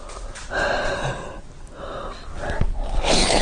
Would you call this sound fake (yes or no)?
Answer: no